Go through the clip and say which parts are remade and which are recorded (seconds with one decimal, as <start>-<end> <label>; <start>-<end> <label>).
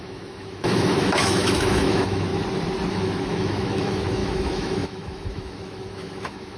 0.0-2.3 remade; 2.3-2.9 recorded; 2.9-6.6 remade